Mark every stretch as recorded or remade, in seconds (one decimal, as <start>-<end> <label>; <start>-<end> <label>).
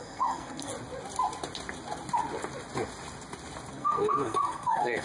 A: 0.0-0.7 remade; 0.7-3.7 recorded; 3.7-5.0 remade